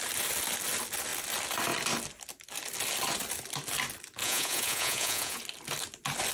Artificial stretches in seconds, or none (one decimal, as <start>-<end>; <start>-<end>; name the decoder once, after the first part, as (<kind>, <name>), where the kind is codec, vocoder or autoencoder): 4.2-5.4 (vocoder, Vocos)